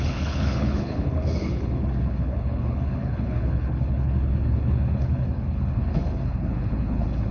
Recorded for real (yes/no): no